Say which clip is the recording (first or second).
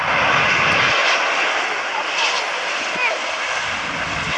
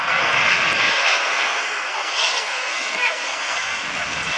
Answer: first